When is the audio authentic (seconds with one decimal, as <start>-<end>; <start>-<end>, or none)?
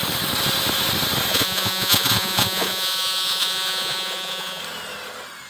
0.0-1.3; 4.6-5.5